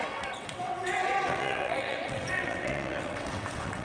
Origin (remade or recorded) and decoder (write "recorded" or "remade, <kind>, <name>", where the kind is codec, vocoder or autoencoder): remade, vocoder, WaveNeXt